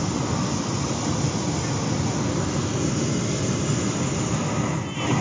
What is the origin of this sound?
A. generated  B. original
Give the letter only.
B